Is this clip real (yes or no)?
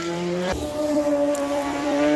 no